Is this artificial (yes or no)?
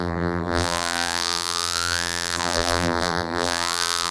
yes